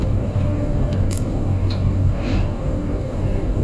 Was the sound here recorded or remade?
remade